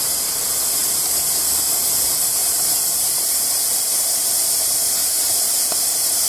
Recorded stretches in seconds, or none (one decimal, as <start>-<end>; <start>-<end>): 0.0-6.3